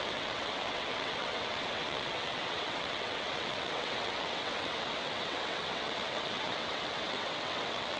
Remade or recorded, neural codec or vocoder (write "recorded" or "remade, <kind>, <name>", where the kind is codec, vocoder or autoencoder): remade, vocoder, WaveNeXt